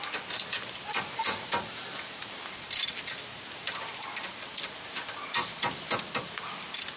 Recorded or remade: recorded